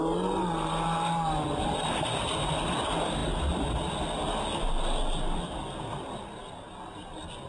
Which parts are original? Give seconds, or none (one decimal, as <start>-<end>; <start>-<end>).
0.0-7.5